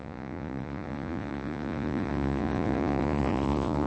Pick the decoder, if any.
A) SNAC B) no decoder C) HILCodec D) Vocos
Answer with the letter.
D